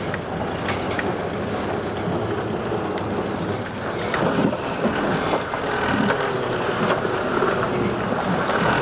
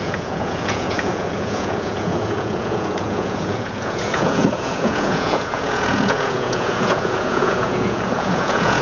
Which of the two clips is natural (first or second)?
first